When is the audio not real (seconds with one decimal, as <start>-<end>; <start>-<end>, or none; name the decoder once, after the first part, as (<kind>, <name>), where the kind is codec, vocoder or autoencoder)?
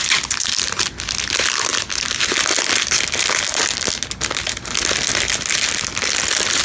1.7-3.1 (vocoder, BigVGAN v2); 5.1-6.6